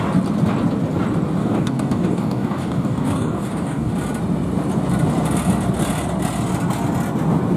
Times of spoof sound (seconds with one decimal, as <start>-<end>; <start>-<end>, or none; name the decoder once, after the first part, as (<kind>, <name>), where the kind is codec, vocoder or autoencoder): 1.4-3.9 (codec, DAC)

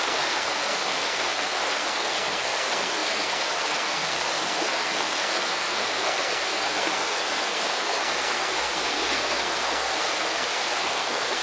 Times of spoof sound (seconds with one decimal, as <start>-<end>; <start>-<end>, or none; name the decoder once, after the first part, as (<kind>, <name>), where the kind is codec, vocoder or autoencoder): 0.0-11.4 (codec, SNAC)

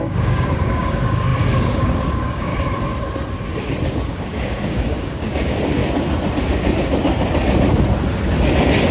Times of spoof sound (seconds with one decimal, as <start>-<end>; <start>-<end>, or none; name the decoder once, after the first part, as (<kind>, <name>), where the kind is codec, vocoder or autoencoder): 0.0-2.5 (codec, DAC); 4.1-5.8

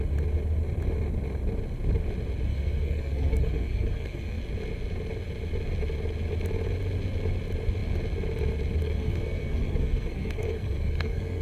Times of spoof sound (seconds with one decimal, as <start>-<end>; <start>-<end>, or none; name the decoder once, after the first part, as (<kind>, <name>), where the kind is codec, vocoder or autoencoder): 2.5-4.4 (codec, SNAC); 8.8-11.4

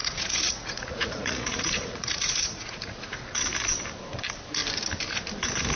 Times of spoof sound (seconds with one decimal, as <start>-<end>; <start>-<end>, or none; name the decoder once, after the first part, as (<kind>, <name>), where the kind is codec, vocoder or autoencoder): 0.0-3.2 (vocoder, Vocos)

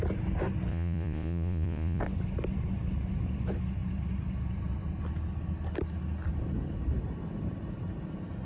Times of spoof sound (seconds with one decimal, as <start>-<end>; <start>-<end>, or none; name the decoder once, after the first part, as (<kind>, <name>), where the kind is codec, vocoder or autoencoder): 0.7-2.0 (vocoder, Vocos)